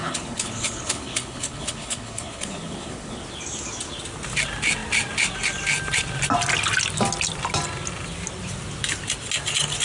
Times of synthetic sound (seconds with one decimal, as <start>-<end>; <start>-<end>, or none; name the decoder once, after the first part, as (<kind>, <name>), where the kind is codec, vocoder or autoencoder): 0.0-3.2 (codec, HILCodec)